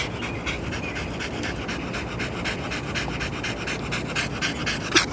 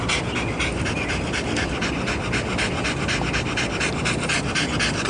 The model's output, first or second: second